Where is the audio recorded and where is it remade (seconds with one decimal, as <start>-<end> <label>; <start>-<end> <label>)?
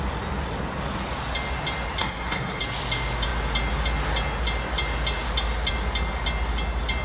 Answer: 0.0-2.0 recorded; 2.0-2.6 remade; 2.6-7.0 recorded